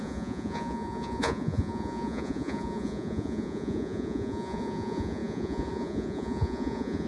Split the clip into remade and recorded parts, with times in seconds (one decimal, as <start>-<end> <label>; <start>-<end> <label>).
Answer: 0.0-7.1 remade